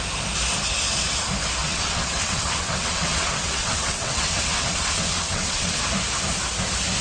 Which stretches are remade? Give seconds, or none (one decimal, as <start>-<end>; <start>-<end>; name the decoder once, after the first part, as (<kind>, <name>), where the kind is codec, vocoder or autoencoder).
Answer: 1.6-5.8 (vocoder, WaveNeXt)